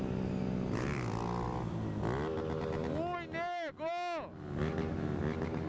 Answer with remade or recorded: recorded